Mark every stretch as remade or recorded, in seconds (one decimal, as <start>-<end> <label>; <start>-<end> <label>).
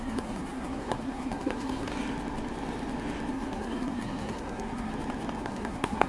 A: 0.0-1.9 remade; 1.9-3.3 recorded; 3.3-4.9 remade; 4.9-5.4 recorded; 5.4-6.1 remade